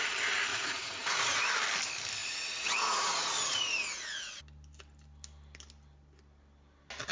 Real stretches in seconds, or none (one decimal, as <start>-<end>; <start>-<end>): 0.0-0.5; 1.5-2.2; 4.4-7.1